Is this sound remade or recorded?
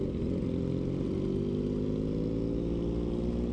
recorded